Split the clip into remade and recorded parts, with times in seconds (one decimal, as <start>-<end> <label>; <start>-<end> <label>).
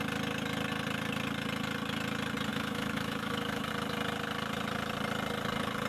0.0-2.5 recorded; 2.5-3.7 remade; 3.7-5.9 recorded